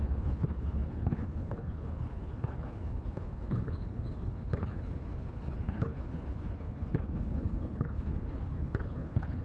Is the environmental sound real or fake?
fake